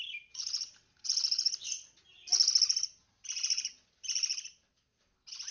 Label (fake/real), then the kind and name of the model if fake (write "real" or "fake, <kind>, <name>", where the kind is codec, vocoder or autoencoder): real